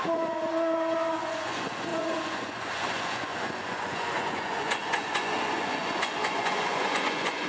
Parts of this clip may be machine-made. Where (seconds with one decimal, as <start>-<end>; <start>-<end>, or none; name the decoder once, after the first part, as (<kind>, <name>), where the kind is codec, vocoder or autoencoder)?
0.0-7.5 (vocoder, Vocos)